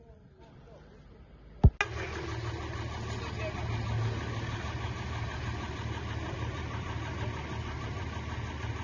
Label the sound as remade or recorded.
recorded